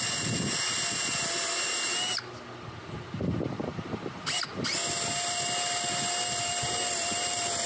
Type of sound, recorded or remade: recorded